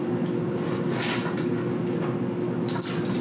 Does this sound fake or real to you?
real